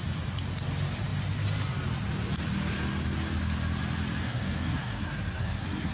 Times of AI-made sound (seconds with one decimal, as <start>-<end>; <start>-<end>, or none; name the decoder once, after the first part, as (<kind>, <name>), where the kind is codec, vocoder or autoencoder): 4.2-5.9 (codec, SNAC)